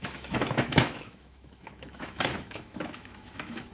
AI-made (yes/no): yes